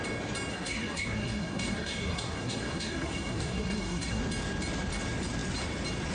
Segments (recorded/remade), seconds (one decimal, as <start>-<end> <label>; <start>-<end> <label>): 0.0-0.5 recorded; 0.5-4.2 remade; 4.2-6.1 recorded

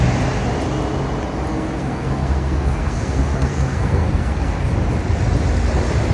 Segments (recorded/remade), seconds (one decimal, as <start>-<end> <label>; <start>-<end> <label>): 0.0-1.5 recorded; 1.5-4.7 remade; 4.7-6.1 recorded

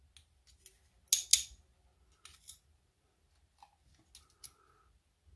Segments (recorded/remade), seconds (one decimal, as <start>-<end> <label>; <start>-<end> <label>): 0.0-5.4 recorded

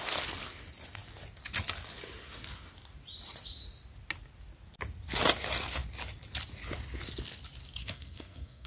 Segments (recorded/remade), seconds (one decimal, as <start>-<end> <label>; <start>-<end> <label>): 0.0-7.8 recorded; 7.8-8.7 remade

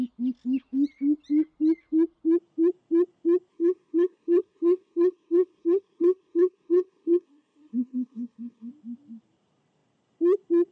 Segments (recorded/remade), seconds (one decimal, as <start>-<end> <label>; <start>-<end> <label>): 0.0-3.5 recorded; 3.5-8.7 remade; 8.7-10.7 recorded

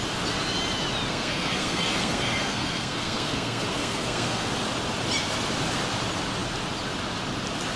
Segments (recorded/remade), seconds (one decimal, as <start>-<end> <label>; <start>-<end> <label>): 0.0-1.1 recorded; 1.1-4.5 remade; 4.5-7.8 recorded

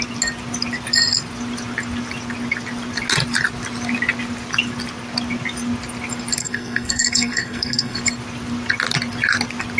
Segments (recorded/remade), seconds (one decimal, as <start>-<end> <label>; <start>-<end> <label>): 0.0-6.4 recorded; 6.4-8.0 remade; 8.0-9.8 recorded

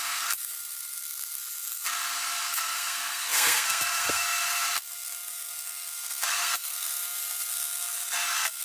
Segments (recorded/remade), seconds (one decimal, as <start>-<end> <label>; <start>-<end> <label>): 0.0-8.6 remade